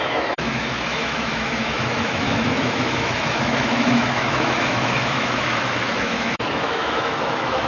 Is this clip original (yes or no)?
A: no